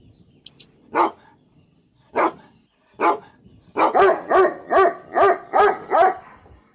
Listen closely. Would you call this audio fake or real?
real